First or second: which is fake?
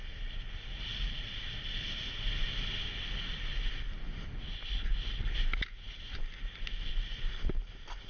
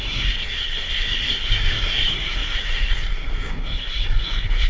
second